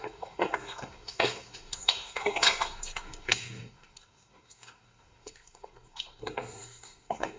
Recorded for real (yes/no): no